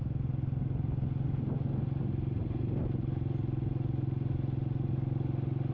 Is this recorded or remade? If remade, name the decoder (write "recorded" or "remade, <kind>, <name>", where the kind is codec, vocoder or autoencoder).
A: recorded